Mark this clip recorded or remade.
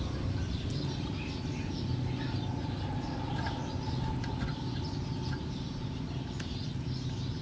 recorded